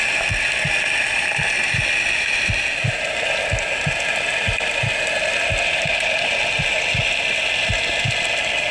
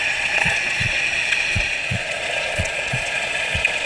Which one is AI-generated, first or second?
second